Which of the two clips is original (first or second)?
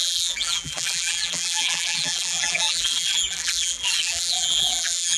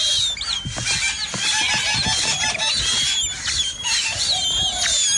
second